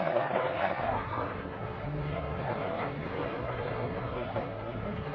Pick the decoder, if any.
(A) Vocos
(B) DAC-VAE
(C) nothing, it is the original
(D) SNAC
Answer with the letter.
D